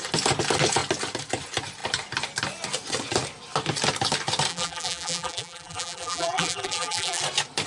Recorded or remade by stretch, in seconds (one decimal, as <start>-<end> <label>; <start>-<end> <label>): 0.0-4.5 recorded; 4.5-7.2 remade; 7.2-7.7 recorded